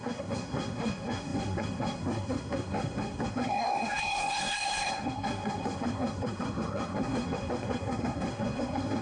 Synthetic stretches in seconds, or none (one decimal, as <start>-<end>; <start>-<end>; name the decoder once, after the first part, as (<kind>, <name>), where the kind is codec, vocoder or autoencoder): 0.0-9.0 (codec, SNAC)